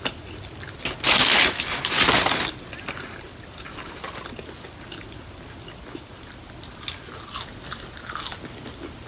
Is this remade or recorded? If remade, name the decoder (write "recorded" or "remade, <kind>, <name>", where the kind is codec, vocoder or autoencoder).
recorded